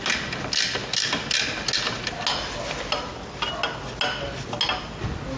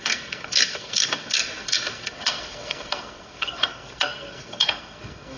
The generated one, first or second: second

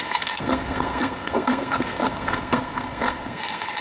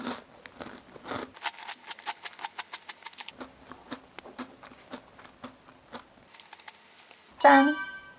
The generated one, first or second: first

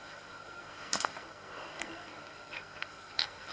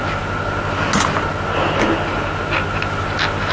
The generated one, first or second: first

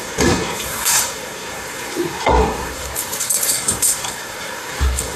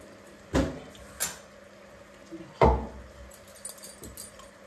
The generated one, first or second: first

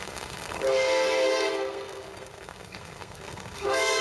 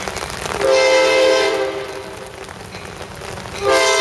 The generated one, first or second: first